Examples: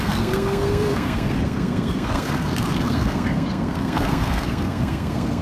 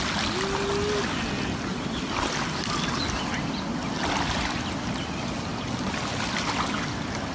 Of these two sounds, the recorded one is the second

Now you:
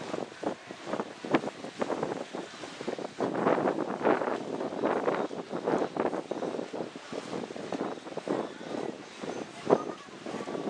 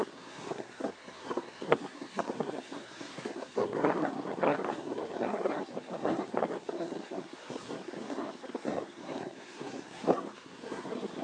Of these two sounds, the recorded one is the first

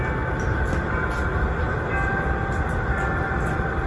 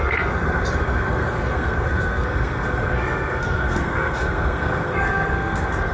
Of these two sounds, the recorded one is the first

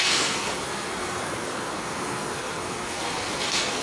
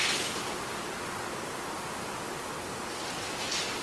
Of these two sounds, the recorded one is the second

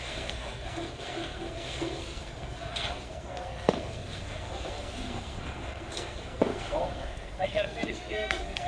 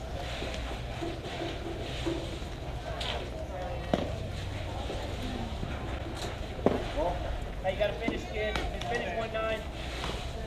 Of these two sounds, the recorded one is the second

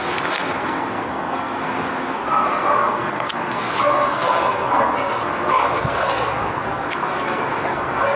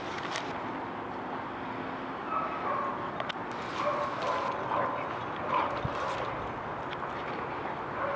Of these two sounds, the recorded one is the second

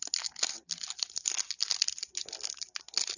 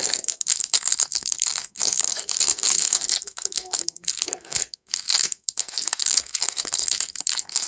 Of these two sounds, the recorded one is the first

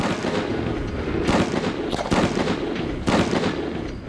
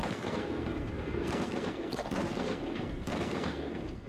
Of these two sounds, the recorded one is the first